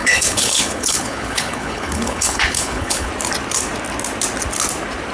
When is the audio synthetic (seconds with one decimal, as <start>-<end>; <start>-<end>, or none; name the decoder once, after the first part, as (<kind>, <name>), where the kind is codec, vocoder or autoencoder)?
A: 0.0-3.1 (codec, HILCodec)